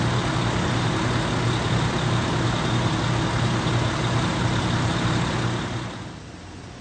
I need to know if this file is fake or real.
real